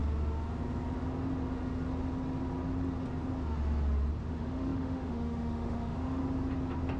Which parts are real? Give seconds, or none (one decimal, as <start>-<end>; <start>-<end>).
0.0-4.2; 6.2-7.0